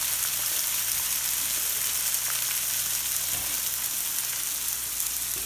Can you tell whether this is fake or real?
real